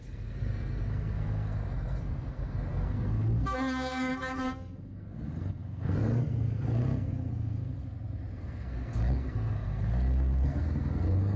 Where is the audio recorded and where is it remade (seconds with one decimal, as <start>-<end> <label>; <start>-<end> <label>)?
0.0-7.8 remade; 7.8-8.3 recorded; 8.3-11.4 remade